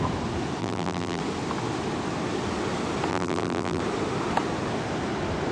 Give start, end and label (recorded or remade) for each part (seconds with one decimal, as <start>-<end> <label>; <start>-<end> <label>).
0.0-0.6 recorded; 0.6-1.2 remade; 1.2-3.1 recorded; 3.1-3.8 remade; 3.8-5.5 recorded